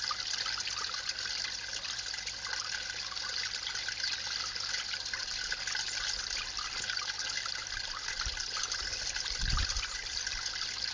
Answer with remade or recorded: recorded